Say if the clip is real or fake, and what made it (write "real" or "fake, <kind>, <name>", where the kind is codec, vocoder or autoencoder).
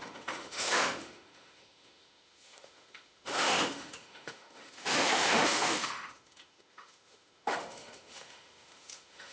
fake, autoencoder, DAC-VAE